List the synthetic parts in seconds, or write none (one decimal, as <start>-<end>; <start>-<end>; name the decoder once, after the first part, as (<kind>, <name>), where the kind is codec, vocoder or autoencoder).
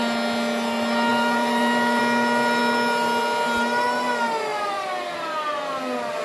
1.1-2.0 (vocoder, BigVGAN v2); 4.5-5.1